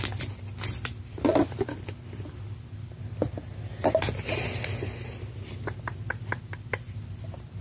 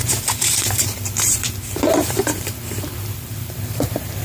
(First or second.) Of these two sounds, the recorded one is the first